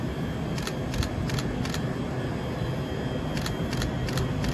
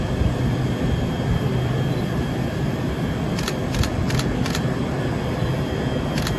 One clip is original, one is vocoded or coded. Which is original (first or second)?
first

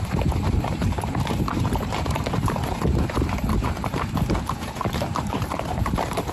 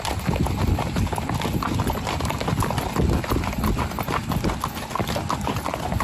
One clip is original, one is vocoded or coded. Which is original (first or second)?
second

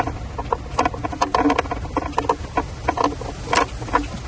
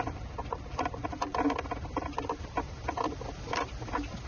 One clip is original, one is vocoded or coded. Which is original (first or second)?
first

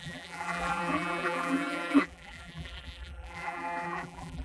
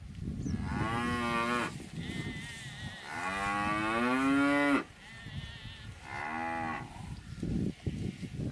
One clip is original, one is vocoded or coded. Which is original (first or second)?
second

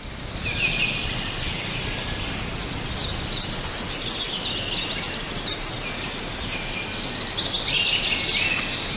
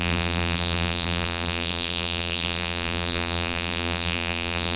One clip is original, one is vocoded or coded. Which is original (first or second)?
first